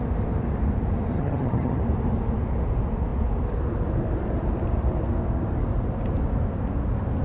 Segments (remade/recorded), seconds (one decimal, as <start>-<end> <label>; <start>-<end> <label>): 0.0-1.1 recorded; 1.1-1.8 remade; 1.8-7.2 recorded